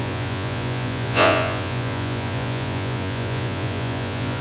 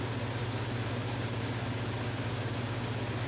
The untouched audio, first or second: second